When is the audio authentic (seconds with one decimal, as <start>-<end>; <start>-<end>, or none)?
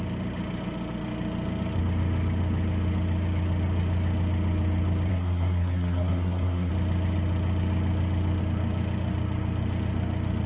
0.0-5.1; 6.7-10.5